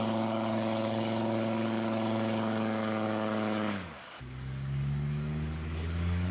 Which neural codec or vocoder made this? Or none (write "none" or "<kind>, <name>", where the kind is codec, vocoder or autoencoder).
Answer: codec, DAC